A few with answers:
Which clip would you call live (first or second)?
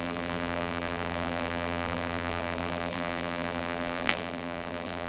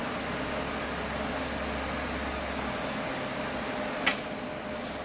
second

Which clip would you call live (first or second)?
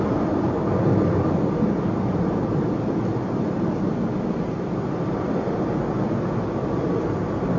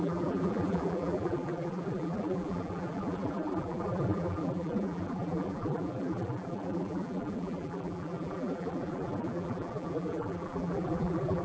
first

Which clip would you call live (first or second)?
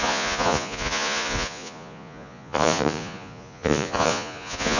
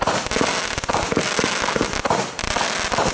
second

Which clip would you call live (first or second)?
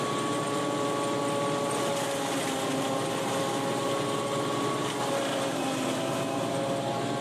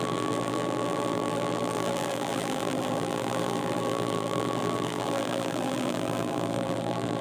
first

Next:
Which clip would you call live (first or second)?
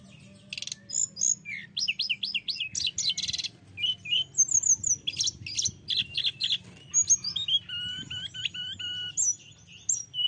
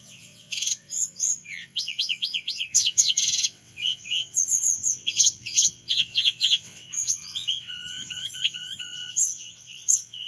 first